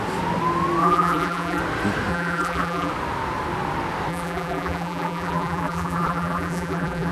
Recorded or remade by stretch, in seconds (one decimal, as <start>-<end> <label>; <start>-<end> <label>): 0.0-0.8 recorded; 0.8-1.6 remade; 1.6-2.1 recorded; 2.1-2.9 remade; 2.9-4.1 recorded; 4.1-7.1 remade